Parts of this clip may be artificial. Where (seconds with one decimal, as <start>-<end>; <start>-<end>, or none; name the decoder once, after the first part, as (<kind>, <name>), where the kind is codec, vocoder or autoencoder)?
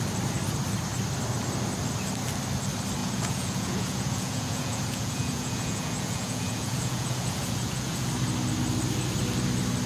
3.0-8.1 (vocoder, Vocos)